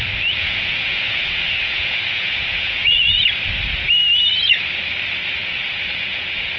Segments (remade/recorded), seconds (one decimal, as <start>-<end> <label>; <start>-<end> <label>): 0.0-0.4 recorded; 0.4-3.2 remade; 3.2-5.4 recorded; 5.4-6.6 remade